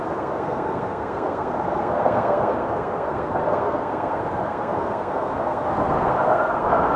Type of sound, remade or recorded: remade